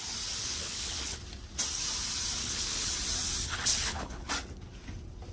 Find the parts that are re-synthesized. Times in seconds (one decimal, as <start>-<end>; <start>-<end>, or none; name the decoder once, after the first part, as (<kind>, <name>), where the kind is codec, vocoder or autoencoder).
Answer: 0.4-1.2 (codec, HILCodec); 2.4-2.9; 3.4-4.3